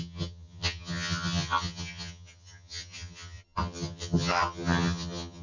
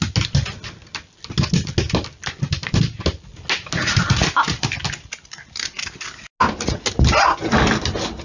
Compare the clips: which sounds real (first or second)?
second